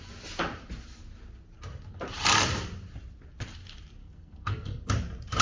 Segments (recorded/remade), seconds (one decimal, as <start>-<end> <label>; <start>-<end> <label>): 0.0-4.0 recorded; 4.0-4.8 remade; 4.8-5.4 recorded